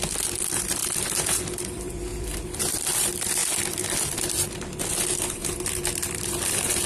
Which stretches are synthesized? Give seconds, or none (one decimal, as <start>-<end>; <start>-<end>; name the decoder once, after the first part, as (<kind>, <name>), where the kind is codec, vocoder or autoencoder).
0.0-0.8 (vocoder, BigVGAN v2); 1.6-3.4; 4.5-5.4; 6.0-6.9